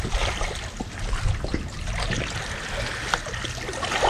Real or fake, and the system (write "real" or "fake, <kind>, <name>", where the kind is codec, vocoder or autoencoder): real